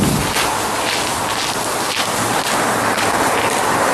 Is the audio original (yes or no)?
yes